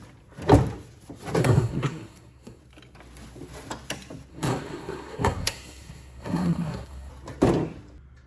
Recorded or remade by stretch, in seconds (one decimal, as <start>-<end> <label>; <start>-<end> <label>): 0.0-1.4 recorded; 1.4-2.6 remade; 2.6-4.3 recorded; 4.3-7.1 remade; 7.1-8.3 recorded